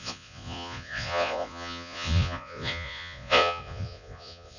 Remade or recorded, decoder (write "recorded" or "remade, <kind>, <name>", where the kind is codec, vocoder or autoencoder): remade, vocoder, Vocos